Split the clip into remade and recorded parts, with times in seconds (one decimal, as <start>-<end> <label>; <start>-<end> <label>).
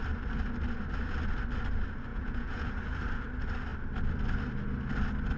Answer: 0.0-2.1 recorded; 2.1-2.7 remade; 2.7-5.4 recorded